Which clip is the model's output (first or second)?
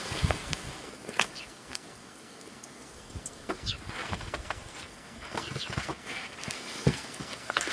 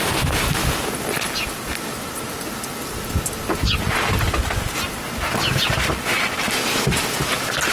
first